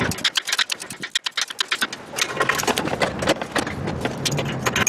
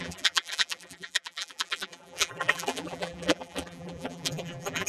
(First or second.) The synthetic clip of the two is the second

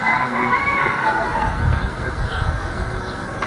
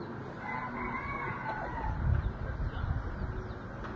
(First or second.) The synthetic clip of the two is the first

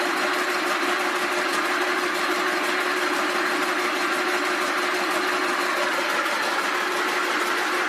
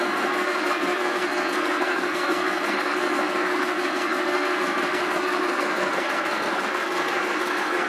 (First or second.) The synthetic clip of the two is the second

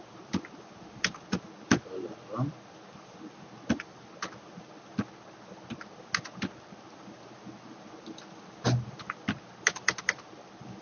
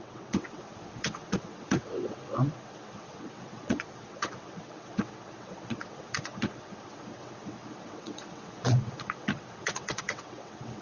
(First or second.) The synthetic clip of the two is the second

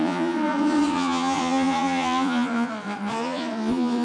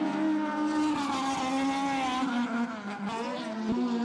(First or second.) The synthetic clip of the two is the first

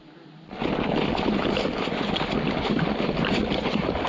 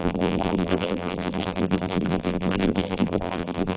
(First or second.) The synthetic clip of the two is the second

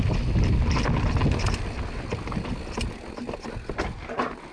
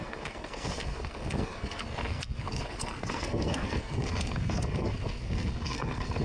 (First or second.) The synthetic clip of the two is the second